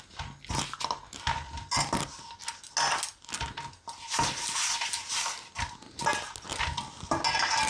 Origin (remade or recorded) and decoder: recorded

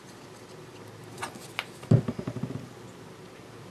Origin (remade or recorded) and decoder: remade, vocoder, BigVGAN v2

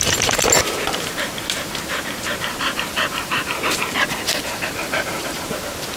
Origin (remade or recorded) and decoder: remade, vocoder, BigVGAN v2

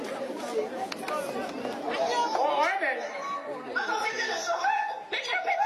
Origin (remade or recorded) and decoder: recorded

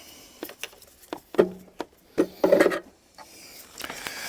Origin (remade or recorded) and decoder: recorded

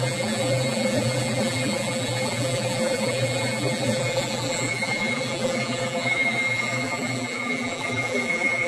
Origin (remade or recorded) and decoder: remade, vocoder, BigVGAN v2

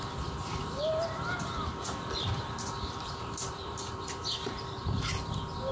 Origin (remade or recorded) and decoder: remade, vocoder, BigVGAN v2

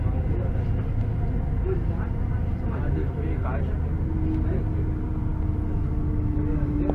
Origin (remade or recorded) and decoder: recorded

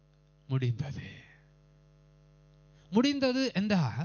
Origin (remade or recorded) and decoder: recorded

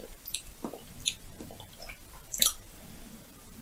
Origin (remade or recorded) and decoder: remade, vocoder, BigVGAN v2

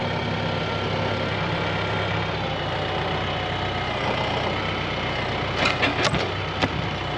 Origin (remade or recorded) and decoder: recorded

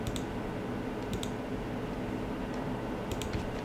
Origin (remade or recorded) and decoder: recorded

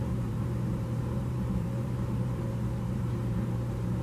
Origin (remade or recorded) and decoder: remade, vocoder, BigVGAN v2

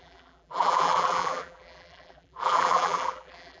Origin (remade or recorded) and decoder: remade, vocoder, BigVGAN v2